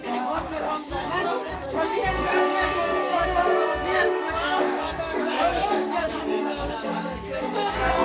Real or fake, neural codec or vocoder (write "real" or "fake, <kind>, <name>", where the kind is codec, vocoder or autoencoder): fake, codec, DAC